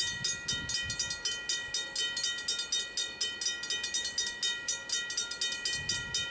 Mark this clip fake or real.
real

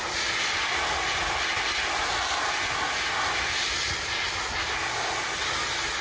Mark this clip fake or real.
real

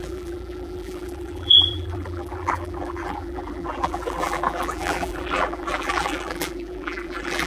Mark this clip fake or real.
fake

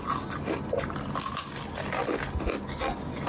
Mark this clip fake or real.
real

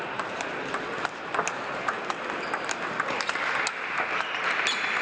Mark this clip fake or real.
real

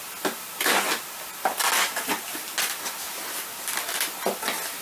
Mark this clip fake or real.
real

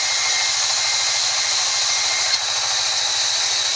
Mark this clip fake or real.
real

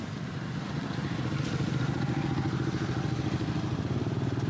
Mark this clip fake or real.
real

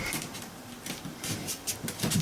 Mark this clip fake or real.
real